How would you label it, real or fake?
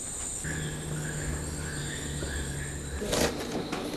real